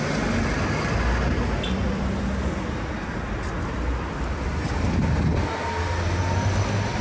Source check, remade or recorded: recorded